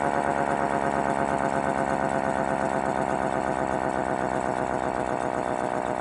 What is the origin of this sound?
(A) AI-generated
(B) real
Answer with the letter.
B